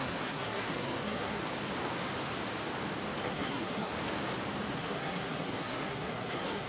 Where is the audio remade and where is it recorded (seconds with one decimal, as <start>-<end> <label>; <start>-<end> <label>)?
0.0-1.4 remade; 1.4-3.2 recorded; 3.2-3.9 remade; 3.9-4.7 recorded; 4.7-6.7 remade